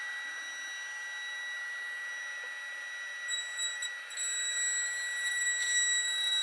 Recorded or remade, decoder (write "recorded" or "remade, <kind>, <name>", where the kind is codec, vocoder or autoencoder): recorded